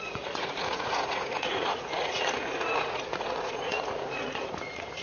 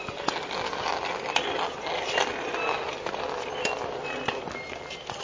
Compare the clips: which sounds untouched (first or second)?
second